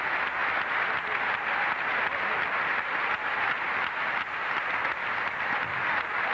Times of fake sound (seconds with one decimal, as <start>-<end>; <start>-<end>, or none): none